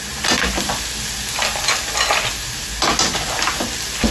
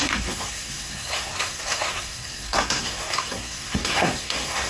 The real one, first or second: first